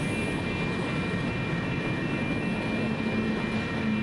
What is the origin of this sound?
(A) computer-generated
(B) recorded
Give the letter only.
B